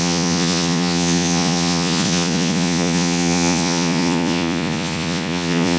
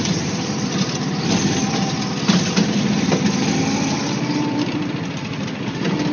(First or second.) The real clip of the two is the second